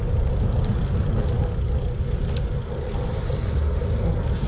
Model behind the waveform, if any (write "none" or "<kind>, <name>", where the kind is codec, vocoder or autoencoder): none